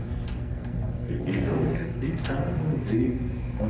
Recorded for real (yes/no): no